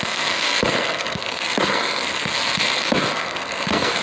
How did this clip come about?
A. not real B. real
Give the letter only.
A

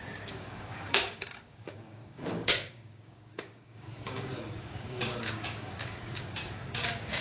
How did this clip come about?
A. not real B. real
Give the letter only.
A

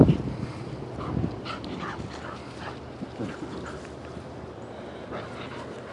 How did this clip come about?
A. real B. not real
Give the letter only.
A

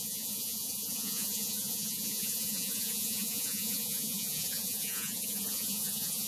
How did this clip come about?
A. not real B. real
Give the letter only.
A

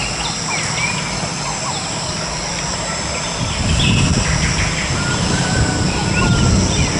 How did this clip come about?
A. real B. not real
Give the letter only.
A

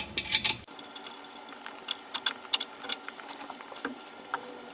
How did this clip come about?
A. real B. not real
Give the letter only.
A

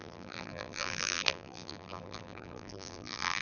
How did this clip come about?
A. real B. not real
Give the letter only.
B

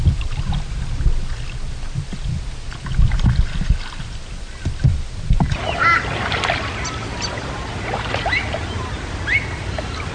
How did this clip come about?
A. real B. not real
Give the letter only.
A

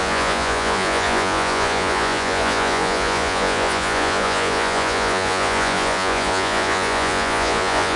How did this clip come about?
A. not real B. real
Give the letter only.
A